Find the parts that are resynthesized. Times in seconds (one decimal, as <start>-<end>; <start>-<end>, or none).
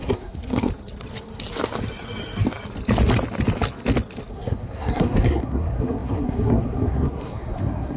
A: 0.0-0.7; 4.3-8.0